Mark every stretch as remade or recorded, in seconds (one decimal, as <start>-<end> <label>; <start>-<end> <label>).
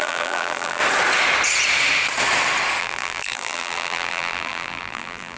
0.0-0.8 remade; 0.8-2.8 recorded; 2.8-5.4 remade